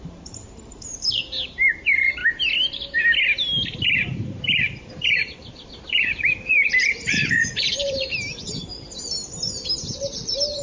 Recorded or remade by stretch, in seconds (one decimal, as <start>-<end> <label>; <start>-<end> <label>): 0.0-2.2 remade; 2.2-3.8 recorded; 3.8-8.6 remade; 8.6-10.0 recorded; 10.0-10.6 remade